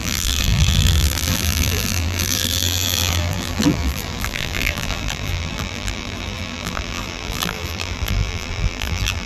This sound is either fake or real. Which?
fake